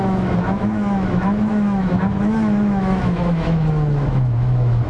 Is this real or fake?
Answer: fake